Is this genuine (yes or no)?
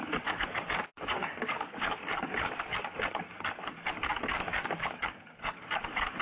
no